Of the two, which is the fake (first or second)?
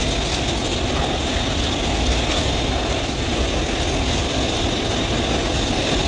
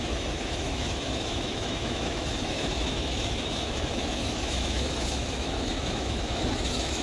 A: second